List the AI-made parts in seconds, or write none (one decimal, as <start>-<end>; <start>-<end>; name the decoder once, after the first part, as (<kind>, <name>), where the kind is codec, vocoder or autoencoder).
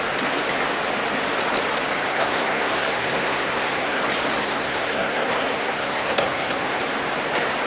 2.1-4.0 (codec, SNAC); 4.4-6.8